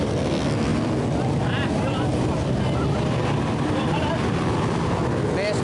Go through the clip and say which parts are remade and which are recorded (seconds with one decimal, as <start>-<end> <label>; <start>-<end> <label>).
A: 0.0-0.7 recorded; 0.7-4.1 remade; 4.1-5.6 recorded